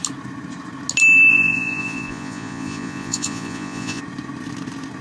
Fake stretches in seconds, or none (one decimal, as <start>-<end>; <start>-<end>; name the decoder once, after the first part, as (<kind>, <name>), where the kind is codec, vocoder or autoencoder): 1.3-4.0 (vocoder, Vocos)